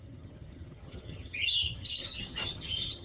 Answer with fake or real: fake